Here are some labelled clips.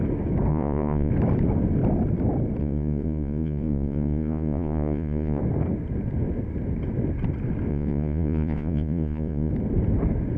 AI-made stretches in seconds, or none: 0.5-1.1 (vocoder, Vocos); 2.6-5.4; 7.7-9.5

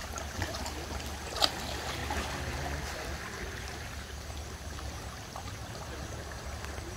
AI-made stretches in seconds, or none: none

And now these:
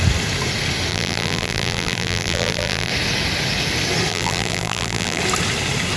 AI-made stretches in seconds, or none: 0.9-2.9 (vocoder, BigVGAN v2); 4.1-5.2

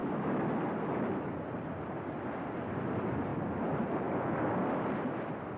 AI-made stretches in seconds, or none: 0.0-0.6 (autoencoder, DAC-VAE)

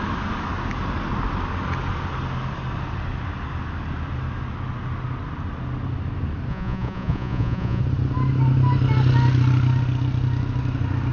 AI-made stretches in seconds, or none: 6.5-7.8 (vocoder, Vocos)

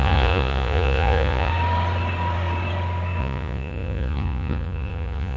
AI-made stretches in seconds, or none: 0.0-1.5 (vocoder, Vocos); 3.2-5.4